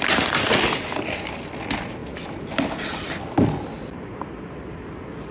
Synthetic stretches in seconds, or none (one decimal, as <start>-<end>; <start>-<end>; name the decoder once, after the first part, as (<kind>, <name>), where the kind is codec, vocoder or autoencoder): none